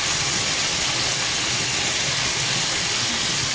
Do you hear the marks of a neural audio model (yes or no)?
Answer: no